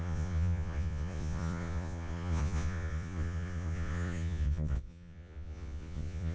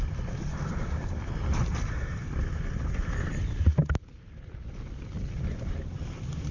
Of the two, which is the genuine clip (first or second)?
second